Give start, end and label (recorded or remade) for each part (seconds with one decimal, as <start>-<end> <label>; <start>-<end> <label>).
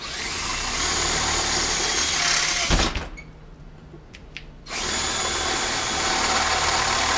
0.0-7.2 recorded